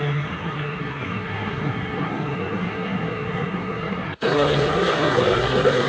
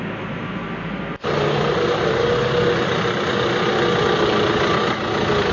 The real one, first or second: second